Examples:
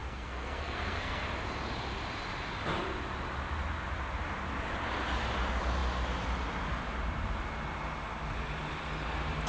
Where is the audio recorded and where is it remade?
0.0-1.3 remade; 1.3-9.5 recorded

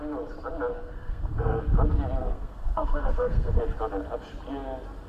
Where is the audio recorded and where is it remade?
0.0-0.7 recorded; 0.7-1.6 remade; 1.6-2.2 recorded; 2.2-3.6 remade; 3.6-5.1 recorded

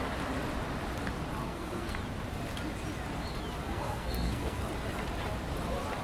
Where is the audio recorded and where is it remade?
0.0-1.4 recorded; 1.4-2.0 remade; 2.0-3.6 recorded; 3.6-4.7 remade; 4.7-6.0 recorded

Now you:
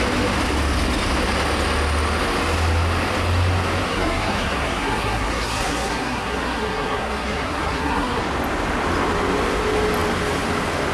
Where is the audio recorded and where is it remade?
0.0-3.9 recorded; 3.9-8.2 remade; 8.2-10.9 recorded

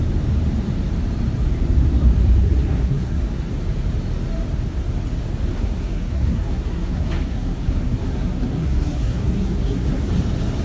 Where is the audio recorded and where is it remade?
0.0-2.4 recorded; 2.4-3.2 remade; 3.2-5.5 recorded; 5.5-10.1 remade; 10.1-10.6 recorded